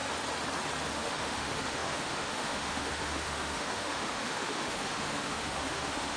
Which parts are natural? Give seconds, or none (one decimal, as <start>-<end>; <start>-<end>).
0.0-0.9